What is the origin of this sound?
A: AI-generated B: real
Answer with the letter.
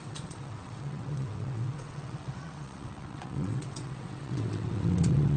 A